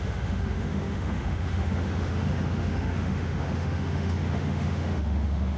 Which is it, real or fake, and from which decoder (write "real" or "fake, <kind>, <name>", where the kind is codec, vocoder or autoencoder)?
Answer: fake, autoencoder, DAC-VAE